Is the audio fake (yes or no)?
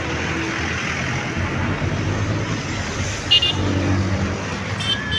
no